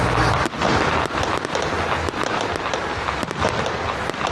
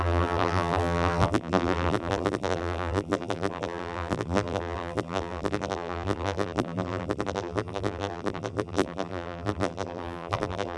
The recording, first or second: first